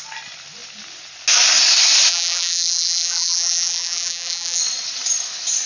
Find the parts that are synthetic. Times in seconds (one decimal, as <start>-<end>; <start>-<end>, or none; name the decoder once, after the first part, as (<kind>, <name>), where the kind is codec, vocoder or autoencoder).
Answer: 2.1-4.6 (vocoder, BigVGAN v2)